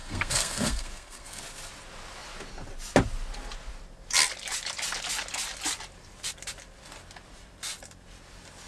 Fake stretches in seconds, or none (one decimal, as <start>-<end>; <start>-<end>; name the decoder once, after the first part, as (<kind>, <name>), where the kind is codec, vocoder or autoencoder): 0.0-1.4 (codec, SNAC)